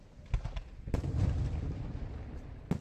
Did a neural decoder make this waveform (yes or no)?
no